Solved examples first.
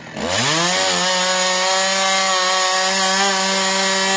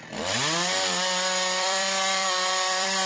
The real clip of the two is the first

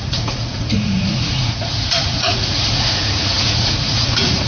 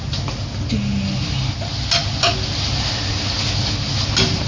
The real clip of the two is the second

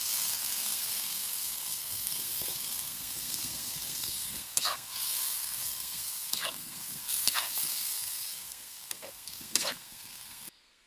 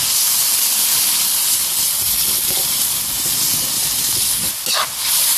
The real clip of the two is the second